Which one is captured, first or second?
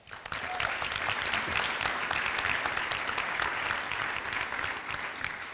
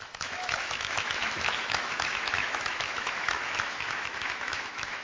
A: first